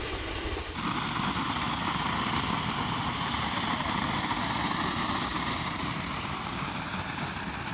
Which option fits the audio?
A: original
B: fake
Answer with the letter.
A